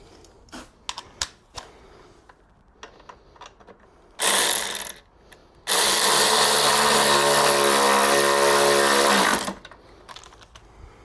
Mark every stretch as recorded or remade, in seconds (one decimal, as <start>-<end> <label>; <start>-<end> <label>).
0.0-11.0 recorded